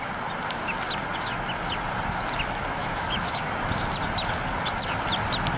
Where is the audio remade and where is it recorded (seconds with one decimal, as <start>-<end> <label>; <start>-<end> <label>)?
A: 0.0-2.8 recorded; 2.8-3.5 remade; 3.5-5.6 recorded